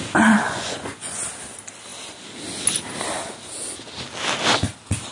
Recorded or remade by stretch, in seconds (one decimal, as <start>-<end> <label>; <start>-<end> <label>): 0.0-0.4 recorded; 0.4-1.2 remade; 1.2-5.1 recorded